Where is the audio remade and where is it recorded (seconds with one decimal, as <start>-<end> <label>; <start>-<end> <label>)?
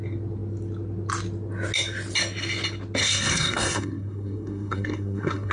0.0-3.0 recorded; 3.0-5.5 remade